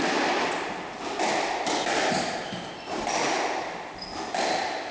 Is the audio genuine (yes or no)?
yes